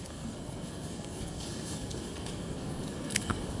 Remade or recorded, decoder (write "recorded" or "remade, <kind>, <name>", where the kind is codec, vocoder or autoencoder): remade, codec, SNAC